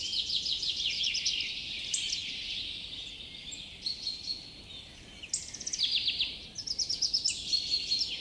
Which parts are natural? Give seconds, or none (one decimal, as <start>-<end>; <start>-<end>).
0.0-8.2